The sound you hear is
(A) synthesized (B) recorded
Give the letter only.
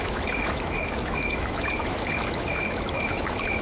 A